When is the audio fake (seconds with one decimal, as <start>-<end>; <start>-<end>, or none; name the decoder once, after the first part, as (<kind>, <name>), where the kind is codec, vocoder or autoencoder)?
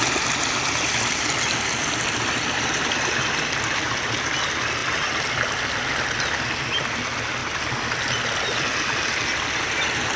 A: none